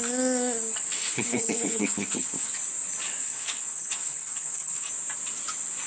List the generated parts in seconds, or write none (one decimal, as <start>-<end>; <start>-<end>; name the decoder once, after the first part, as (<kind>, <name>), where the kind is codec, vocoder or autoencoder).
1.0-2.5 (codec, HILCodec); 3.2-4.9